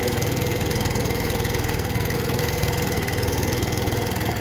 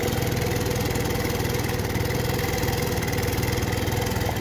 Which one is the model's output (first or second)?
first